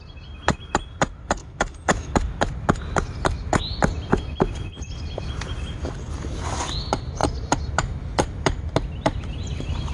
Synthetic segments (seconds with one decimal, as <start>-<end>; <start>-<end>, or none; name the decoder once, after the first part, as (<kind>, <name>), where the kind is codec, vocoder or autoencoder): 1.4-2.1 (autoencoder, DAC-VAE)